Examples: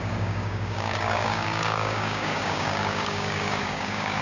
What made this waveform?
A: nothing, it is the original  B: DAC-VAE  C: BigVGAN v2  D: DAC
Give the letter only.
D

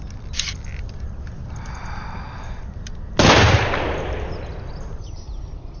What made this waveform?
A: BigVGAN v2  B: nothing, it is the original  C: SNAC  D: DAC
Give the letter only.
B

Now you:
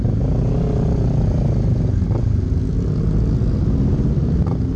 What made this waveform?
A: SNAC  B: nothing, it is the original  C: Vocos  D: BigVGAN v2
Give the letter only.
B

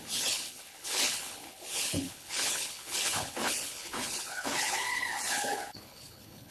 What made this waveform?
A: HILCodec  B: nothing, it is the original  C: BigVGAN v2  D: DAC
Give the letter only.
A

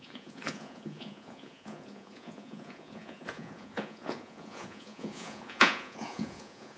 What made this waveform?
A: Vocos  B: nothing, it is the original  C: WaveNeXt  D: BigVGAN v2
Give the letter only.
A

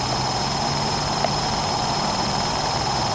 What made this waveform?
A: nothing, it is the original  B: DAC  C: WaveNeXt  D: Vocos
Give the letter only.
A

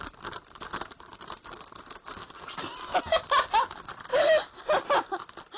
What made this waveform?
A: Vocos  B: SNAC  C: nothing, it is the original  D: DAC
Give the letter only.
C